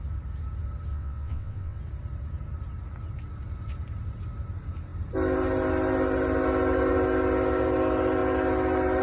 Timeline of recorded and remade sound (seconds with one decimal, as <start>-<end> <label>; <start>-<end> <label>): 0.0-0.9 recorded; 0.9-1.8 remade; 1.8-9.0 recorded